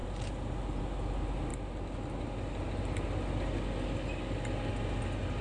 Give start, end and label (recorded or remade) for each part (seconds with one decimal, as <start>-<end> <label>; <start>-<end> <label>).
0.0-5.4 recorded